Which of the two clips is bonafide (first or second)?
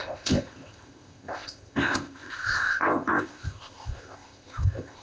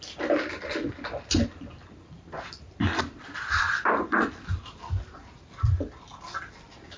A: second